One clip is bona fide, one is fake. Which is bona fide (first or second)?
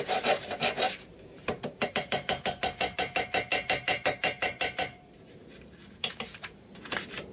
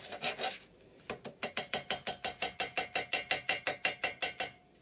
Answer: second